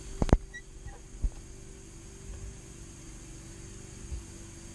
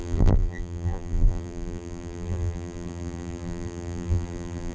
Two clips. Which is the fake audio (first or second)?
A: second